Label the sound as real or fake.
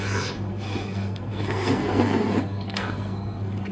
fake